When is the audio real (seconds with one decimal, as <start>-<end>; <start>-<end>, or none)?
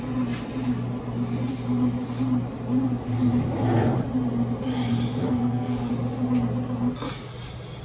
0.0-5.2; 5.9-7.8